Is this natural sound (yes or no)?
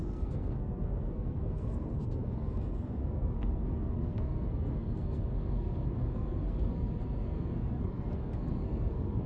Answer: no